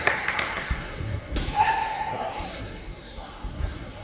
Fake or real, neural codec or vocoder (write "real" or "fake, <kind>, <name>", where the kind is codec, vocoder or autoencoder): fake, codec, SNAC